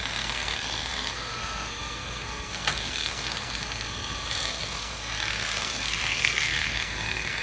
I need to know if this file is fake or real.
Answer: fake